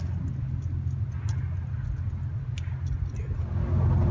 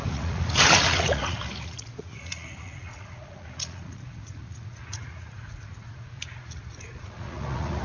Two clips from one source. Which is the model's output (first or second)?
second